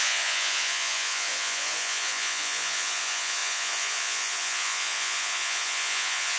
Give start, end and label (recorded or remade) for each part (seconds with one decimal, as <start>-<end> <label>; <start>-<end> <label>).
0.0-6.4 remade